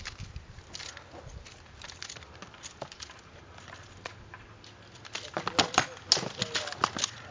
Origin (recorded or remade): recorded